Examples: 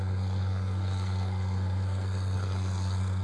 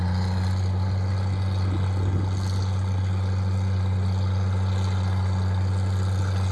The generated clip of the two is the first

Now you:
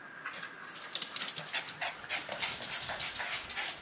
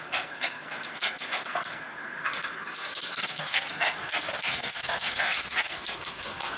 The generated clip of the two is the second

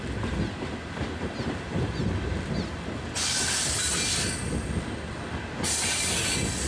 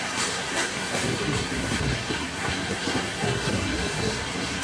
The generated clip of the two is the second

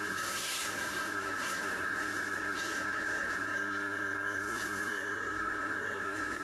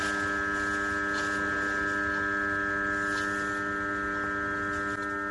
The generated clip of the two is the first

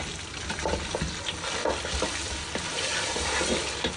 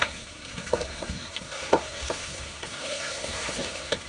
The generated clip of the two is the second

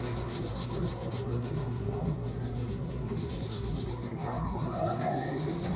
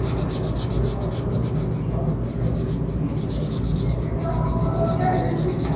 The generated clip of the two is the first